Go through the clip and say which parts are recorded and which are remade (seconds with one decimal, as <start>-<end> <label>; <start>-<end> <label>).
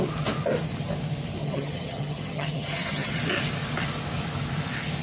0.0-1.4 recorded; 1.4-3.2 remade; 3.2-5.0 recorded